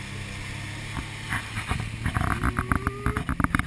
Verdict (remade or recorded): recorded